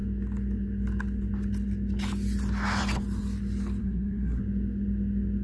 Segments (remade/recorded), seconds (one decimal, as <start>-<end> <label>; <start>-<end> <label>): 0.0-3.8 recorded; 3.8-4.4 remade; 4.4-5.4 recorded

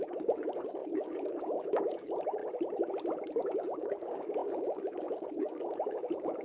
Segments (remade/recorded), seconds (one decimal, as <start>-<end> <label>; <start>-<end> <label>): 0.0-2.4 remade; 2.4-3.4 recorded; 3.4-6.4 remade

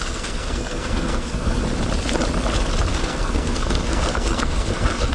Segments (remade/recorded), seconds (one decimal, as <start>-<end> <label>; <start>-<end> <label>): 0.0-1.6 remade; 1.6-2.9 recorded; 2.9-5.1 remade

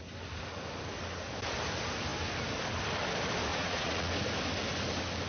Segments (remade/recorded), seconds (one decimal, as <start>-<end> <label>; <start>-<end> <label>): 0.0-3.5 recorded; 3.5-4.1 remade; 4.1-5.3 recorded

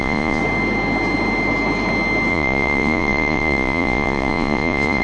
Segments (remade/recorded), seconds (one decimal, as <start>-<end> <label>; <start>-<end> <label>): 0.0-0.4 remade; 0.4-2.3 recorded; 2.3-5.0 remade

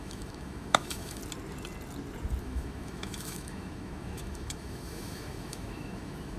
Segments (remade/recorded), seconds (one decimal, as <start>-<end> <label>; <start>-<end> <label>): 0.0-1.2 remade; 1.2-2.4 recorded; 2.4-6.4 remade

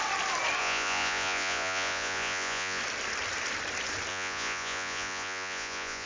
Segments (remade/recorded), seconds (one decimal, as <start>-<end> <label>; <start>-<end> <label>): 0.0-0.6 recorded; 0.6-2.8 remade; 2.8-4.1 recorded; 4.1-6.1 remade

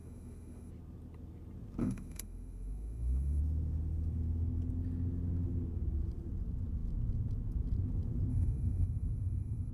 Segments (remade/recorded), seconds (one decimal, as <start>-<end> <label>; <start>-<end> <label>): 0.0-0.7 remade; 0.7-1.8 recorded; 1.8-3.4 remade; 3.4-8.3 recorded; 8.3-9.7 remade